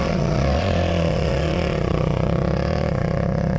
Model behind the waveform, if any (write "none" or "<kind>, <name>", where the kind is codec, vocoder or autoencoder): vocoder, Vocos